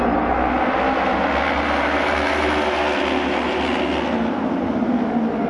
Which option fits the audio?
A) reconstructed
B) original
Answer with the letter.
B